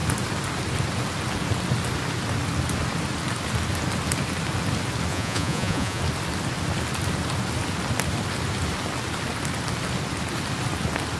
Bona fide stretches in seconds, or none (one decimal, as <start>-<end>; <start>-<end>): 0.0-5.1; 6.0-11.2